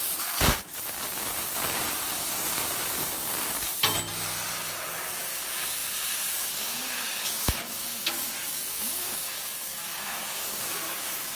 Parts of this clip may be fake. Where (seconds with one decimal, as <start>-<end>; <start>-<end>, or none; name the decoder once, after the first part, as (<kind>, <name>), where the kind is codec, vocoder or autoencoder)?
0.0-3.7 (codec, DAC); 5.0-11.4